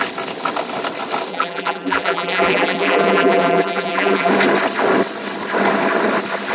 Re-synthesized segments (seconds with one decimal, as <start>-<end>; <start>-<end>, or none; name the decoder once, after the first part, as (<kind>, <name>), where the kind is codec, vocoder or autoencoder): 1.3-4.3 (vocoder, BigVGAN v2)